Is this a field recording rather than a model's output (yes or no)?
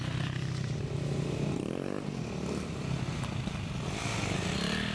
yes